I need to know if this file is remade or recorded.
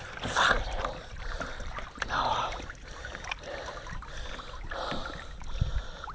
recorded